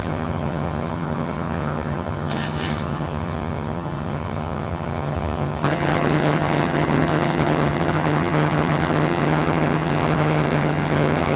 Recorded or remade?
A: remade